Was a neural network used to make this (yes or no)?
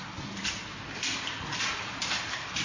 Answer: no